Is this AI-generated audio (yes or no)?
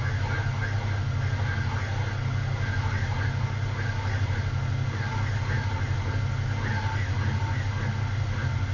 no